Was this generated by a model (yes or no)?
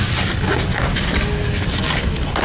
no